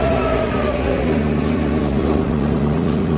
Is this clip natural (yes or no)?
no